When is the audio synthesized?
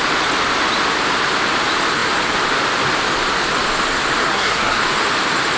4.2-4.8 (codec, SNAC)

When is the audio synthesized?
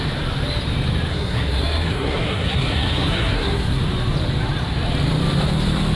1.1-3.8 (codec, SNAC)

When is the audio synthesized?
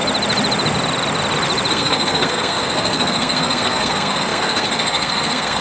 1.7-5.6 (codec, SNAC)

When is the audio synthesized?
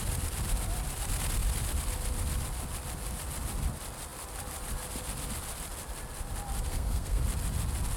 6.7-7.2 (codec, SNAC)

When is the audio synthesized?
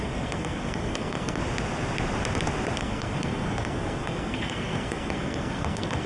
0.0-1.4 (codec, SNAC); 2.8-6.1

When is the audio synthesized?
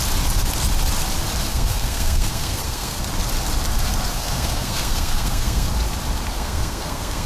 1.5-3.0 (codec, SNAC); 4.1-5.7; 6.3-7.3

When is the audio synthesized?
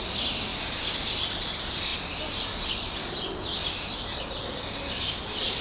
none